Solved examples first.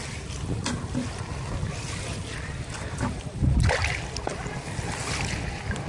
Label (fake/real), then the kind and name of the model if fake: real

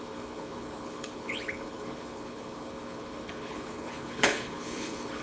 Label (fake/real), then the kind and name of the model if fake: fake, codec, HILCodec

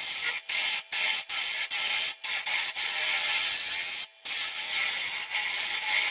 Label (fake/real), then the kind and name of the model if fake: real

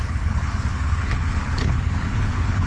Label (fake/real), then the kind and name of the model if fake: fake, codec, HILCodec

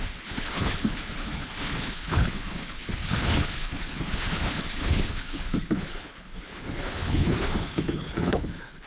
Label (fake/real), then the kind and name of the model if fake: fake, codec, HILCodec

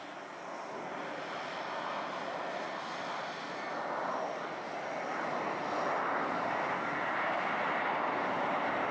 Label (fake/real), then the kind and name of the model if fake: real